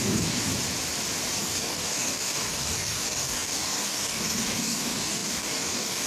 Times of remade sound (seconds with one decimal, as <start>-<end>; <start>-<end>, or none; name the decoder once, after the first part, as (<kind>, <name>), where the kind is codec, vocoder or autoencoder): 0.0-0.5 (codec, DAC); 1.4-6.1